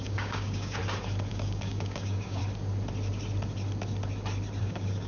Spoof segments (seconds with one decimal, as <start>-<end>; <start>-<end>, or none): 0.0-0.8; 1.3-2.4; 4.6-5.1